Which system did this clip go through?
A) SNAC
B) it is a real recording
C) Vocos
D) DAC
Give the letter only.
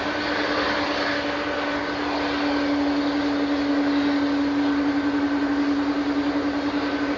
B